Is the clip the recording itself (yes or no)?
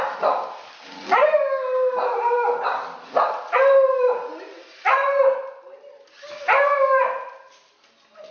yes